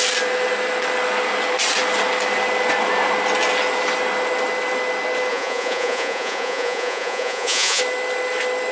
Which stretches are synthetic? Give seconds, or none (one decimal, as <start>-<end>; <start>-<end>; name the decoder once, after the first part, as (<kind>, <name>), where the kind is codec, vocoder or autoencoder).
5.3-7.8 (vocoder, Vocos)